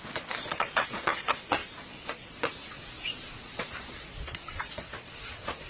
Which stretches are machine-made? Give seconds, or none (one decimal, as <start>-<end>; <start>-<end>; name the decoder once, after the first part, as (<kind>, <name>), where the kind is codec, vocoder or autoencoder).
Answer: 0.0-5.7 (vocoder, Vocos)